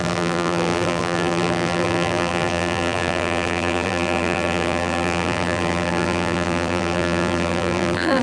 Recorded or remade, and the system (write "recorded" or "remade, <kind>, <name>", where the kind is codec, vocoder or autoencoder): remade, vocoder, BigVGAN v2